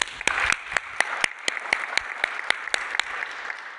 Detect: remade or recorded recorded